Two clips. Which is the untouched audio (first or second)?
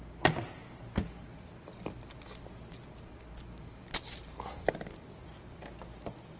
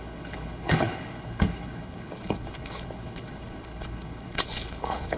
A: first